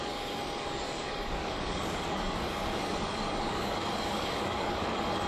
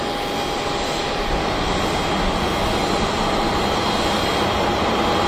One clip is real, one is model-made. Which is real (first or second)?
second